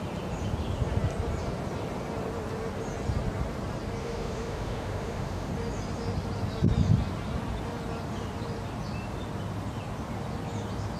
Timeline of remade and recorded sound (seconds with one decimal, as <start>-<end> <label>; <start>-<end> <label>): 0.0-4.0 recorded; 4.0-5.5 remade; 5.5-11.0 recorded

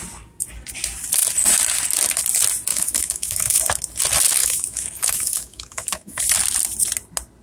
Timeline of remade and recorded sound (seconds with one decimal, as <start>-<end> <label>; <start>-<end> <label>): 0.0-2.7 recorded; 2.7-3.6 remade; 3.6-4.4 recorded; 4.4-6.2 remade; 6.2-7.4 recorded

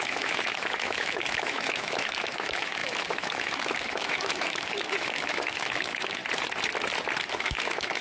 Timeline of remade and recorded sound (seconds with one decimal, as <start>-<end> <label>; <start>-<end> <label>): 0.0-6.2 remade; 6.2-7.4 recorded; 7.4-8.0 remade

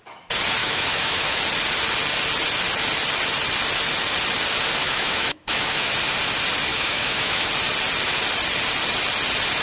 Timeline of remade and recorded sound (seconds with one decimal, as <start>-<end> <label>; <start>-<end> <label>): 0.0-0.6 recorded; 0.6-1.4 remade; 1.4-4.8 recorded; 4.8-5.9 remade; 5.9-6.7 recorded; 6.7-7.5 remade; 7.5-9.6 recorded

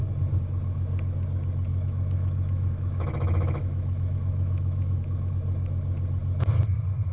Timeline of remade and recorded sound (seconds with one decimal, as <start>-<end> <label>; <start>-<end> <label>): 0.0-1.7 recorded; 1.7-5.3 remade; 5.3-7.1 recorded